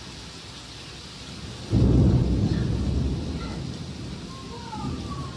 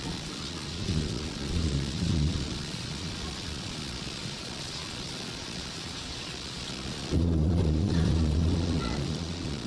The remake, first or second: second